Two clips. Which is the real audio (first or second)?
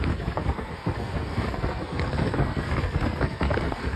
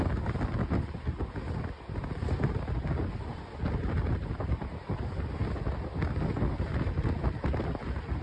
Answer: second